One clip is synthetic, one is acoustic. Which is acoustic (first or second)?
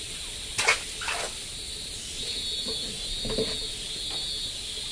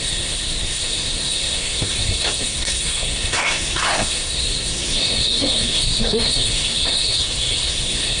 first